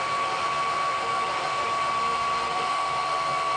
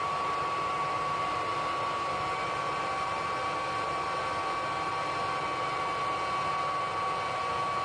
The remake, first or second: first